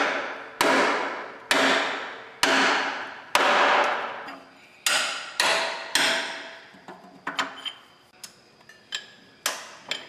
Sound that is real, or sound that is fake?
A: real